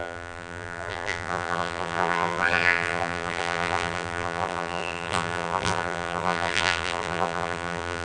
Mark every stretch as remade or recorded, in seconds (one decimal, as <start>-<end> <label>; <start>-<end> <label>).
0.0-8.0 remade